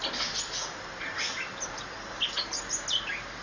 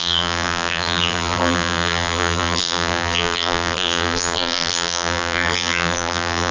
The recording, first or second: first